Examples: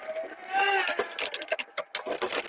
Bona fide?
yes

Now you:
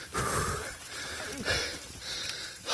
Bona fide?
yes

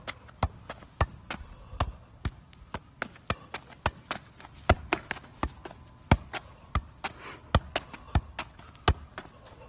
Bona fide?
yes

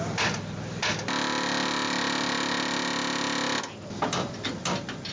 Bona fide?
yes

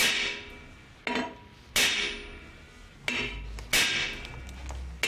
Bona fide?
yes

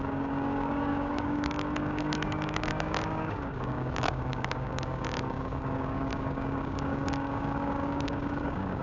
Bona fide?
no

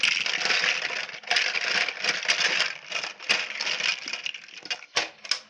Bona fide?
yes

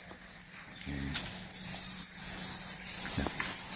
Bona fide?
yes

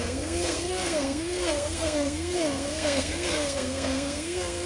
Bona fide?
no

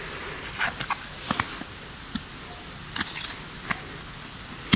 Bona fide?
yes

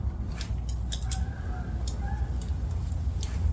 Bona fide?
yes